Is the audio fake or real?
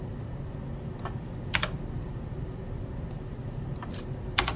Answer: real